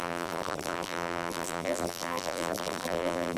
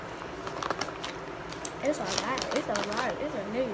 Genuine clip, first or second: second